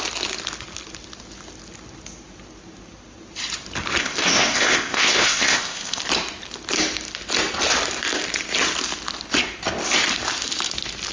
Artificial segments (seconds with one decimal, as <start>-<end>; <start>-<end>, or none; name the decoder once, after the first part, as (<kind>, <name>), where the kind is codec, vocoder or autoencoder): 4.0-6.0 (codec, ZipCodec)